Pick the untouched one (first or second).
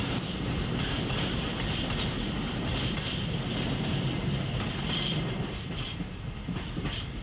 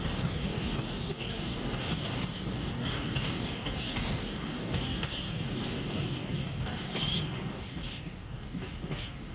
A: first